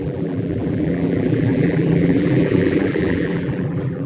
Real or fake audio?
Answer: fake